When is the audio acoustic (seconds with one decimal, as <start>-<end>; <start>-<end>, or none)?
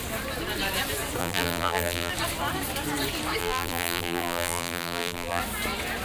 0.0-1.2; 2.1-3.4; 5.4-6.0